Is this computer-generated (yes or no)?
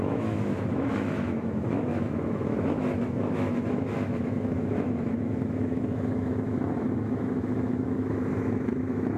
yes